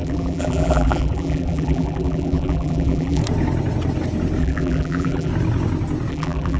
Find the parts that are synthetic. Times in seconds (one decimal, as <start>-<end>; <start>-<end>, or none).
0.0-3.2; 4.4-5.3; 6.1-6.6